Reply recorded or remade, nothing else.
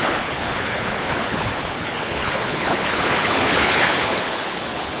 remade